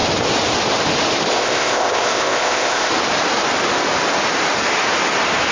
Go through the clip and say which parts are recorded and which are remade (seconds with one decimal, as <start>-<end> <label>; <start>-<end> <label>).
0.0-1.3 recorded; 1.3-2.9 remade; 2.9-5.5 recorded